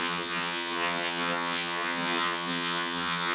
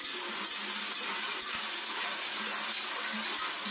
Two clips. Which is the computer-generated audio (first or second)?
first